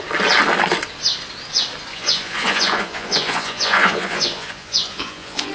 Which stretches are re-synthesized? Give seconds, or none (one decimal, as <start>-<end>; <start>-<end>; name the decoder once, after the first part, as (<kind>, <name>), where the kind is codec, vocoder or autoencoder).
1.9-5.5 (vocoder, Vocos)